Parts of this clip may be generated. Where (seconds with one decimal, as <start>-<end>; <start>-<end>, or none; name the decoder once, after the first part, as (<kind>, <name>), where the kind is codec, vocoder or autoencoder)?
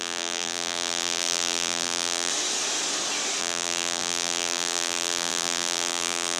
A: 0.0-2.3 (vocoder, BigVGAN v2); 3.4-6.4